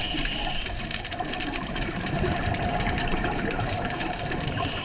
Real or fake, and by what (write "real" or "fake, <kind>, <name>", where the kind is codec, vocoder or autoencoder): fake, vocoder, BigVGAN v2